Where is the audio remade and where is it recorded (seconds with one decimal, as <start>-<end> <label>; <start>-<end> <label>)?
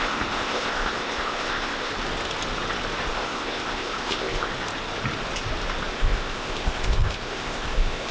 0.0-1.9 remade; 1.9-3.1 recorded; 3.1-4.5 remade; 4.5-5.9 recorded; 5.9-8.1 remade